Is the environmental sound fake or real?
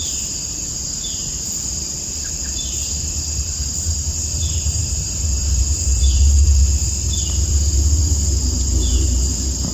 fake